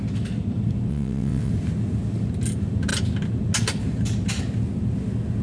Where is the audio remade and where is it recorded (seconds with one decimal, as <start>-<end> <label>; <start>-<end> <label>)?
0.0-0.9 recorded; 0.9-1.5 remade; 1.5-5.4 recorded